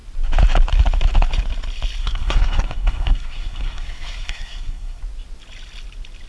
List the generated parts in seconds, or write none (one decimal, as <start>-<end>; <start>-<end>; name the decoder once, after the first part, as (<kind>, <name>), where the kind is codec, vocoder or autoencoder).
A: 2.0-5.0 (codec, SNAC)